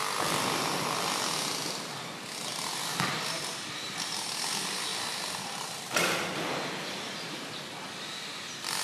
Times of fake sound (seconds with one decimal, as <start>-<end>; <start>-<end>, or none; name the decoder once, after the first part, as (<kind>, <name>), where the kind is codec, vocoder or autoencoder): none